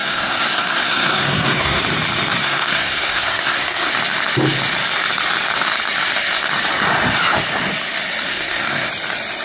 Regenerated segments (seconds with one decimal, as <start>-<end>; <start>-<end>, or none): 0.0-1.8; 2.4-3.9; 8.3-8.9